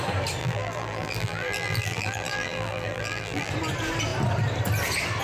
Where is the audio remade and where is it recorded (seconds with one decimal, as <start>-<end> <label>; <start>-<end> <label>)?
0.0-0.4 recorded; 0.4-3.5 remade; 3.5-5.2 recorded